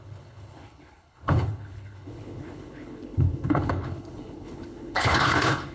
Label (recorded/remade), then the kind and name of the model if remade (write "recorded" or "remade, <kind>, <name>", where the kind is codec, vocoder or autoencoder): remade, codec, HILCodec